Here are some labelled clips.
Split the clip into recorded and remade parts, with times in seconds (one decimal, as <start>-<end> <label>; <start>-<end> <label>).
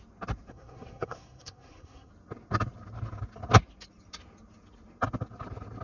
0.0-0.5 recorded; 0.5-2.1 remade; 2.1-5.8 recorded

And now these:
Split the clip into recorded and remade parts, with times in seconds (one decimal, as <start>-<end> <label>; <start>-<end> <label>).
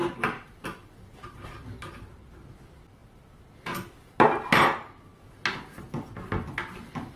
0.0-0.6 remade; 0.6-1.1 recorded; 1.1-1.9 remade; 1.9-7.2 recorded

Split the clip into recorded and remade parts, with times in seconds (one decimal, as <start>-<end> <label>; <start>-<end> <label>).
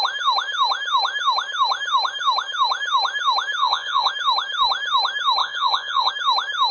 0.0-3.6 recorded; 3.6-4.1 remade; 4.1-5.4 recorded; 5.4-6.1 remade; 6.1-6.7 recorded